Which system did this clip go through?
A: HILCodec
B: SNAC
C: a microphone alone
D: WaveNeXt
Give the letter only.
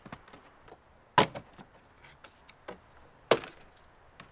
C